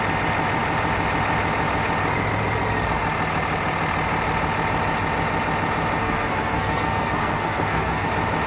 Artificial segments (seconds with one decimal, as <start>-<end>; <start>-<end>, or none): 6.0-8.1